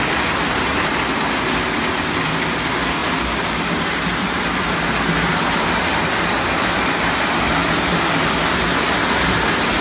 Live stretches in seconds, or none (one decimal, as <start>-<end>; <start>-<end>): 0.0-9.8